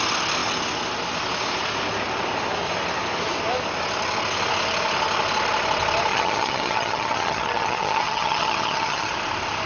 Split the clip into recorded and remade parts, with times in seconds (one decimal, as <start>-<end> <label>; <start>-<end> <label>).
0.0-6.1 recorded; 6.1-9.1 remade; 9.1-9.7 recorded